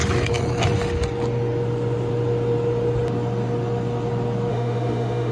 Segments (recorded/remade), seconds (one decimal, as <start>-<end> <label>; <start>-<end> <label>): 0.0-4.5 recorded; 4.5-5.3 remade